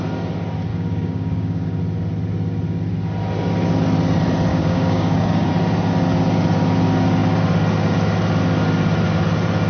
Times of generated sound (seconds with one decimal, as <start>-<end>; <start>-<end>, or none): 0.7-1.8; 4.5-5.5